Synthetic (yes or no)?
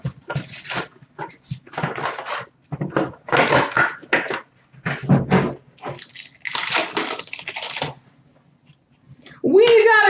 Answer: no